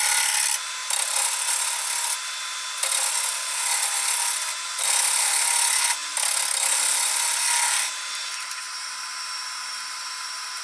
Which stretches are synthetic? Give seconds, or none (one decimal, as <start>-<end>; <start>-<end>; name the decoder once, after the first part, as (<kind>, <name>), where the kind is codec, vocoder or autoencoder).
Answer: none